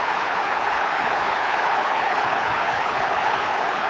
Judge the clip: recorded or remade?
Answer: remade